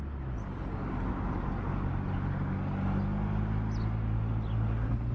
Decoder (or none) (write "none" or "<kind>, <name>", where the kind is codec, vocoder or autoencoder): none